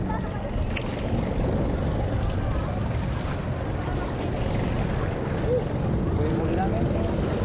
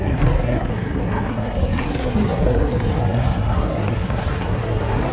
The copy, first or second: second